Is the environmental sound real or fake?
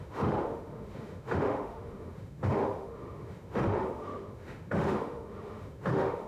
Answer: fake